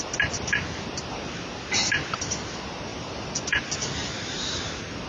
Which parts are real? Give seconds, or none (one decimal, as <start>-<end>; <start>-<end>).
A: 0.0-2.9; 3.6-4.0; 4.5-5.1